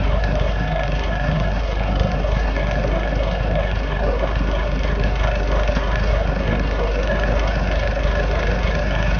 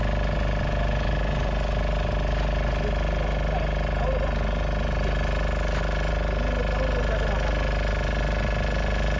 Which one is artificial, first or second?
first